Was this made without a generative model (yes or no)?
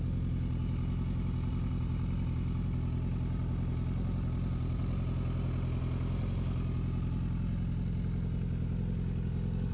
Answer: yes